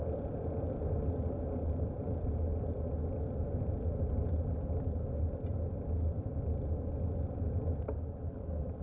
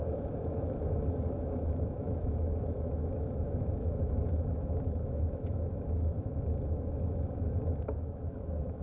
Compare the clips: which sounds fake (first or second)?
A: second